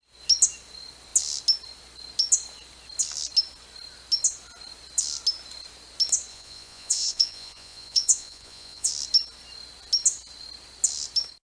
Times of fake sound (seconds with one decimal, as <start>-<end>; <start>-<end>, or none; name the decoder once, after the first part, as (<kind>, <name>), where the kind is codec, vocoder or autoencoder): 6.3-8.9 (vocoder, Vocos)